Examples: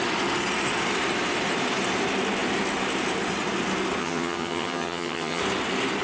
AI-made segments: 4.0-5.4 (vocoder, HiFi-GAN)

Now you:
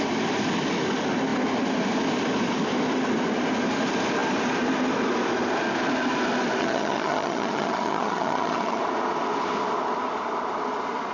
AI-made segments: 6.6-8.8 (vocoder, HiFi-GAN)

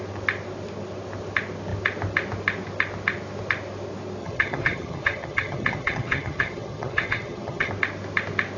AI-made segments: 4.2-7.7 (vocoder, HiFi-GAN)

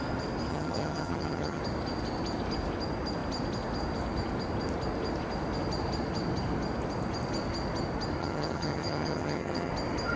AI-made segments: 0.5-1.6 (vocoder, HiFi-GAN); 8.2-9.7

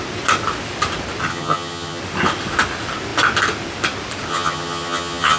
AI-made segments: 1.3-2.0 (vocoder, HiFi-GAN); 4.3-5.4